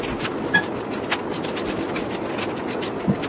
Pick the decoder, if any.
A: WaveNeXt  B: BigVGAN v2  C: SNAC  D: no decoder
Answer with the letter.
D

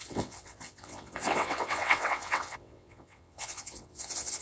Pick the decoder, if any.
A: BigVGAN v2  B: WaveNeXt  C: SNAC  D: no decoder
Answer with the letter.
B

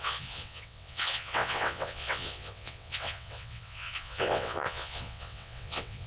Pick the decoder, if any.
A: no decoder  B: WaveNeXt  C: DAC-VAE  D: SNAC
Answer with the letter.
B